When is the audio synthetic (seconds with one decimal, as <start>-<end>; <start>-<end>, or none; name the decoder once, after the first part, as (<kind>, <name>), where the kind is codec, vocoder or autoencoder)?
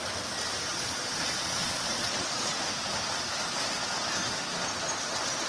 0.7-2.5 (vocoder, Vocos)